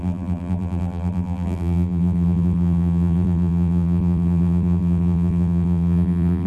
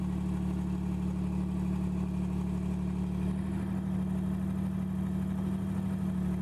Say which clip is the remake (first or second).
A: first